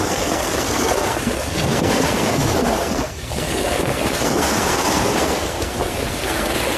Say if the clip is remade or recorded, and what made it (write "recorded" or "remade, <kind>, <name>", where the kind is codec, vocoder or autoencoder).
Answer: remade, codec, SNAC